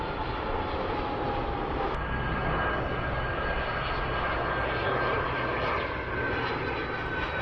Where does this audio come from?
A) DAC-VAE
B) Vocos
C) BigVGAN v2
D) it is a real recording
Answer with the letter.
D